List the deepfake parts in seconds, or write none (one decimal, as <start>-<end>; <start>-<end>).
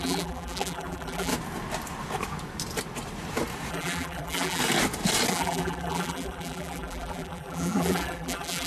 0.0-1.3; 3.7-4.6; 5.3-8.7